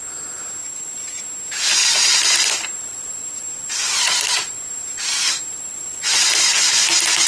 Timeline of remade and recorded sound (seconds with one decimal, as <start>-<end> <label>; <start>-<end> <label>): 0.0-0.6 recorded; 0.6-1.2 remade; 1.2-1.8 recorded; 1.8-6.0 remade; 6.0-7.3 recorded